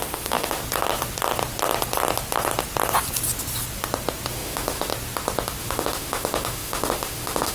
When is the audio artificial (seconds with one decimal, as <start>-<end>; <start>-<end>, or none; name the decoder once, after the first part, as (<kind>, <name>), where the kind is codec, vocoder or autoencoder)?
0.0-0.6 (autoencoder, DAC-VAE); 4.3-4.9; 5.6-7.5